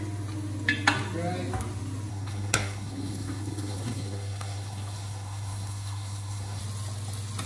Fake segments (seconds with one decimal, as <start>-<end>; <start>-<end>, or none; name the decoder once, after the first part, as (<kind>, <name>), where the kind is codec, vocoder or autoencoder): 2.1-6.6 (codec, SNAC)